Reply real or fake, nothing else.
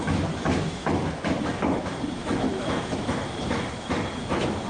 fake